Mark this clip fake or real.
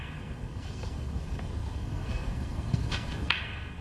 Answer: fake